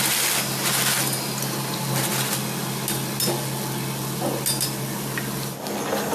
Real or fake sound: real